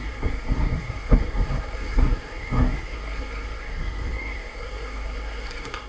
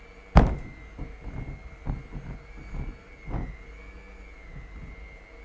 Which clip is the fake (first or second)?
first